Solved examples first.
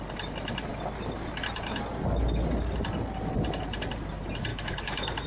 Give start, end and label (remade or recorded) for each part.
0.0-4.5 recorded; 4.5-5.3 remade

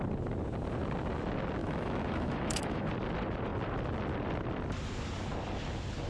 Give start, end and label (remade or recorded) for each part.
0.0-1.6 recorded; 1.6-2.9 remade; 2.9-6.1 recorded

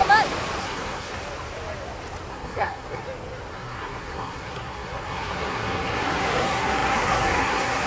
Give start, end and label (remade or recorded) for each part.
0.0-0.6 recorded; 0.6-1.1 remade; 1.1-2.3 recorded; 2.3-3.0 remade; 3.0-3.5 recorded; 3.5-7.9 remade

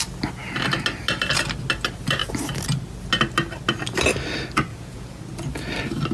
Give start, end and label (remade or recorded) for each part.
0.0-4.7 recorded; 4.7-5.2 remade; 5.2-6.1 recorded

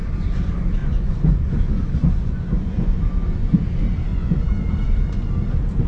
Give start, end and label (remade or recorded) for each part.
0.0-0.8 recorded; 0.8-3.0 remade; 3.0-4.1 recorded; 4.1-4.6 remade; 4.6-5.9 recorded

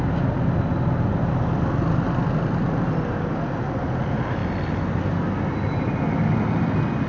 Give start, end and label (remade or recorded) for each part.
0.0-7.1 recorded